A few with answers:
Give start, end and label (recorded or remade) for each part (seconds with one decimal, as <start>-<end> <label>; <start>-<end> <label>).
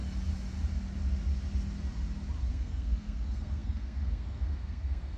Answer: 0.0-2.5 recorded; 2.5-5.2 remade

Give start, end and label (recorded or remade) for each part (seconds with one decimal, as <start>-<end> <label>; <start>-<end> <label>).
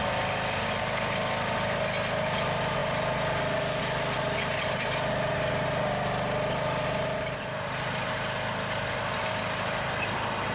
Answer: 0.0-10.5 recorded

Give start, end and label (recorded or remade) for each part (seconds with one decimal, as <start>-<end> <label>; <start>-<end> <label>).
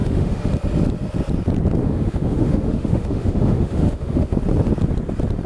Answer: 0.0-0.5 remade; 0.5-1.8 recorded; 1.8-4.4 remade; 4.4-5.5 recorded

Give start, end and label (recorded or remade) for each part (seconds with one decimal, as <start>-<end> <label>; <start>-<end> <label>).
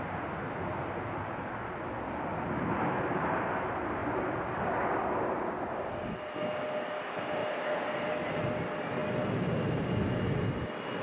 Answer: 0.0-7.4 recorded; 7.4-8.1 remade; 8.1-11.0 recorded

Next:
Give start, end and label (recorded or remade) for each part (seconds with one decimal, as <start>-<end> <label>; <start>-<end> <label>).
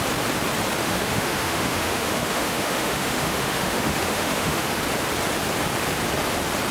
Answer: 0.0-0.8 recorded; 0.8-4.8 remade; 4.8-6.7 recorded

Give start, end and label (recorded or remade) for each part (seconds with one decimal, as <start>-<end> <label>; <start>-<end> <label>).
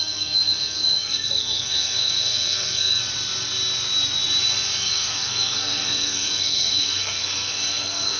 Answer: 0.0-3.0 remade; 3.0-4.8 recorded; 4.8-8.2 remade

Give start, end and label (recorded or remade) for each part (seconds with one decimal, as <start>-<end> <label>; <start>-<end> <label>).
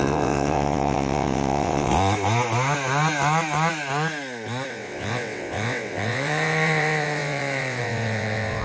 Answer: 0.0-1.9 remade; 1.9-4.7 recorded; 4.7-8.6 remade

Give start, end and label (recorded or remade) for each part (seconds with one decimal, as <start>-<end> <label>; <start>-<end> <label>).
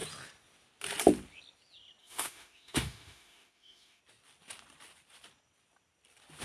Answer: 0.0-2.0 recorded; 2.0-4.0 remade; 4.0-6.4 recorded